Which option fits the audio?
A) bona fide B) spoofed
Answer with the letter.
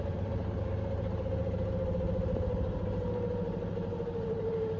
B